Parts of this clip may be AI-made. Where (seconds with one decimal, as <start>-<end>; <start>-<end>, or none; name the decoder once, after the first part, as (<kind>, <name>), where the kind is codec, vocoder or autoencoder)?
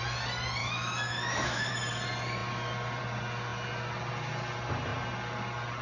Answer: 0.6-1.7 (autoencoder, DAC-VAE)